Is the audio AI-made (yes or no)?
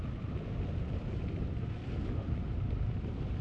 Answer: no